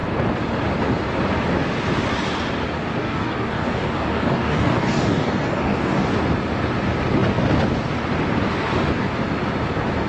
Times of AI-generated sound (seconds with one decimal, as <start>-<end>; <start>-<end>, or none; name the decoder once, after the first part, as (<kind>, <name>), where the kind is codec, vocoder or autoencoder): 3.0-6.1 (codec, DAC)